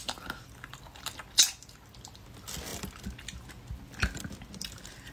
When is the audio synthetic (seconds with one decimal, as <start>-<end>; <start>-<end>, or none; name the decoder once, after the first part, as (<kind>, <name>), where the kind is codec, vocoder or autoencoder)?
none